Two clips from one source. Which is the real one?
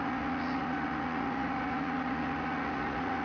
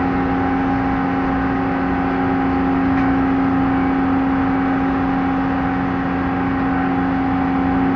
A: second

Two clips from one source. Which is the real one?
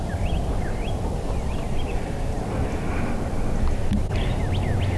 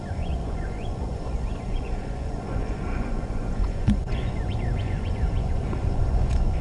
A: first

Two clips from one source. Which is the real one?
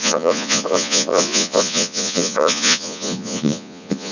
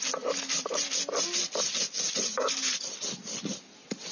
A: second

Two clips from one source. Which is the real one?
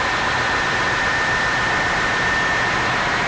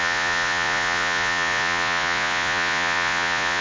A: first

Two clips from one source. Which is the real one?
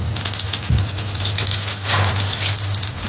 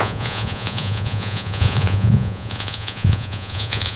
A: first